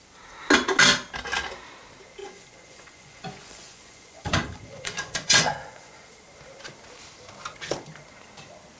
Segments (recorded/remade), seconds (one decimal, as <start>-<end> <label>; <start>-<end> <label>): 0.0-2.2 recorded; 2.2-6.1 remade; 6.1-8.8 recorded